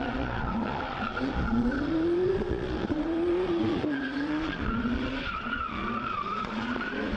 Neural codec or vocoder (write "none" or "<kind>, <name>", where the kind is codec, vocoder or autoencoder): vocoder, Vocos